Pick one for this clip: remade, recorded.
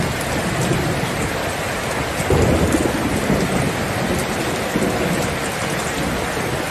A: recorded